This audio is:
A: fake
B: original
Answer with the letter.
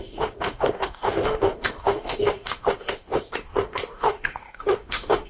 A